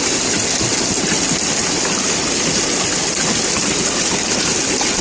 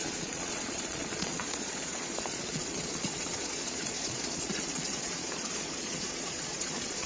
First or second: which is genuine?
first